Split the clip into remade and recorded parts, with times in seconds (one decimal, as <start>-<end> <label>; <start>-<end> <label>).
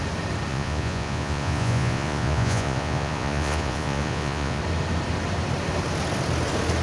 0.0-0.5 recorded; 0.5-4.6 remade; 4.6-6.8 recorded